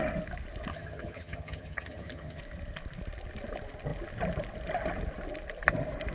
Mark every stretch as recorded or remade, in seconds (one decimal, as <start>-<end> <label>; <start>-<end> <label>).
0.0-0.7 recorded; 0.7-2.4 remade; 2.4-6.1 recorded